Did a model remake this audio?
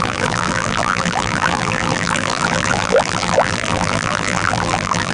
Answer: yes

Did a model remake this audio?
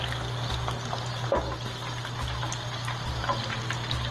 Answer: no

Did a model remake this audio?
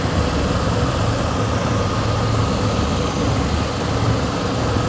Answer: no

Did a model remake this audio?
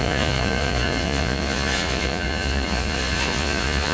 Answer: yes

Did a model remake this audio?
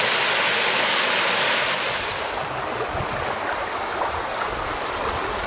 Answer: no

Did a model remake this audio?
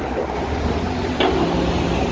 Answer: no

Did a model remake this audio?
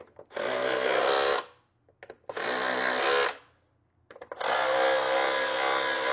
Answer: no